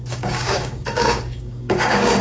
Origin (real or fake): fake